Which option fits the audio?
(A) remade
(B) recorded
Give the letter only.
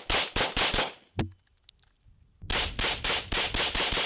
B